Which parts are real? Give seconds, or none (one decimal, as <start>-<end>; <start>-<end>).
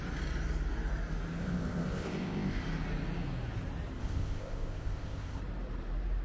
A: 0.0-1.4; 2.6-4.0; 5.4-6.2